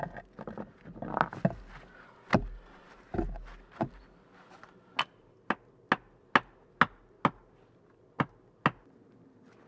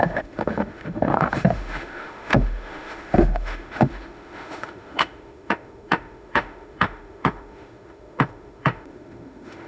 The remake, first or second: second